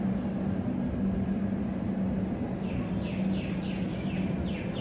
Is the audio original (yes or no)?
yes